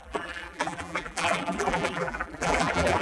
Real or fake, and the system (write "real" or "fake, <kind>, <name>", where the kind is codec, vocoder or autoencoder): fake, vocoder, BigVGAN v2